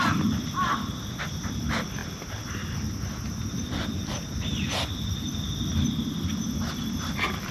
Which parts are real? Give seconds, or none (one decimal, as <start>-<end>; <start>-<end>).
0.0-7.5